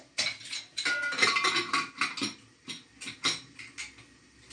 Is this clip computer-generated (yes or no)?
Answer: no